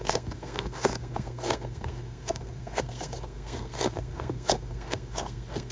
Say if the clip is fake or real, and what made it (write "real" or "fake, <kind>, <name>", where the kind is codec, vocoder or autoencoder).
fake, codec, SNAC